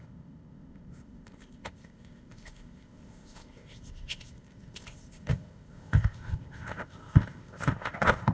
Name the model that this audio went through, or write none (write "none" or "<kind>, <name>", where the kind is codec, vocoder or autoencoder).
codec, ZipCodec